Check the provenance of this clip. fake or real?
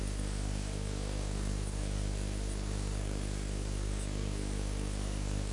fake